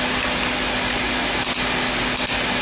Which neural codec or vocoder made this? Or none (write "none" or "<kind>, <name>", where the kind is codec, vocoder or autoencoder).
none